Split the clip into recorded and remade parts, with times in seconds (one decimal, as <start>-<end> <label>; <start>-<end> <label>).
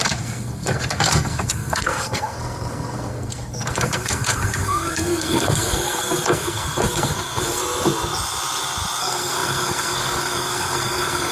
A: 0.0-7.6 remade; 7.6-9.0 recorded; 9.0-11.3 remade